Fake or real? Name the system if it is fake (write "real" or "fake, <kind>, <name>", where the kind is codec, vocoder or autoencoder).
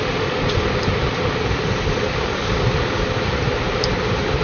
real